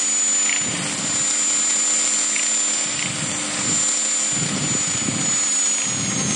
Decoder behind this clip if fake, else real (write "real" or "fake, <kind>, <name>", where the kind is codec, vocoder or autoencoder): real